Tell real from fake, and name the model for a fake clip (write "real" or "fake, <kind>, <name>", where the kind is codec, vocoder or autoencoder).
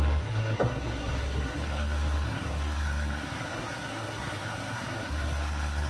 fake, codec, SNAC